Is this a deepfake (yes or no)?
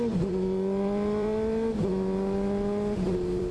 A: yes